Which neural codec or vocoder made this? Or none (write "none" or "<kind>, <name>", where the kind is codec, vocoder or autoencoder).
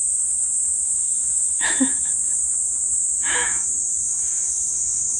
autoencoder, DAC-VAE